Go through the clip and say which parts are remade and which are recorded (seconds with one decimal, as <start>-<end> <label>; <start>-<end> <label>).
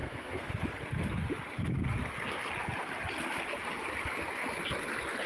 0.0-0.5 remade; 0.5-5.3 recorded